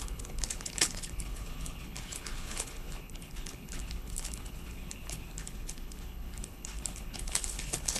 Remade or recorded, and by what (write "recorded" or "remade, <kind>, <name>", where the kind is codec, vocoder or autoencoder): remade, codec, HILCodec